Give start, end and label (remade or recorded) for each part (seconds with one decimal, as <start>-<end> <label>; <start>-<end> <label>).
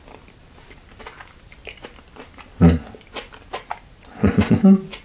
0.0-5.0 recorded